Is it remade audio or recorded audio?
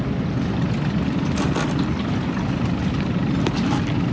recorded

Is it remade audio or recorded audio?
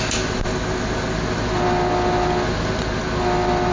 recorded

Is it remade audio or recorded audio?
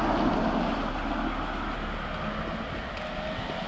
recorded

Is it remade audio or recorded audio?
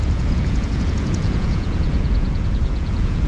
remade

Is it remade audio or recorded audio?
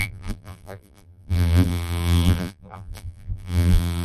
remade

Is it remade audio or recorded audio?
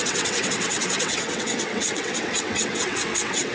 remade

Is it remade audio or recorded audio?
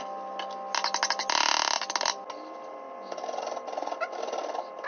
recorded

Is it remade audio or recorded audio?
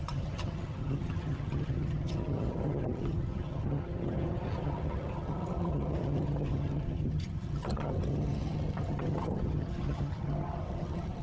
remade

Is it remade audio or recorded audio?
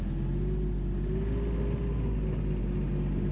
recorded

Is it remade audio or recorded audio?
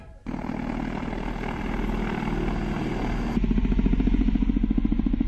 recorded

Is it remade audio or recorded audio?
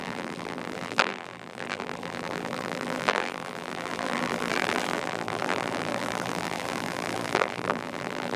remade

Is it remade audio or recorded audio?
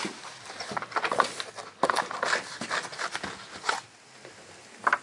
recorded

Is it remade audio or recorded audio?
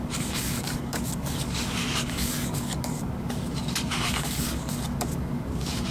remade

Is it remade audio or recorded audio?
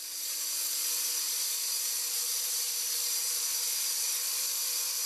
remade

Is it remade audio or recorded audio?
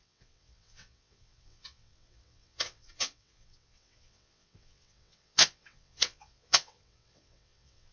remade